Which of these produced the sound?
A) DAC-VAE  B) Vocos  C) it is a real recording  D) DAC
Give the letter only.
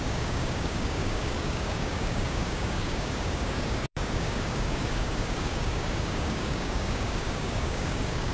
D